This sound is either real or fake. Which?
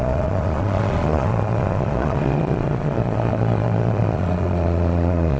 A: fake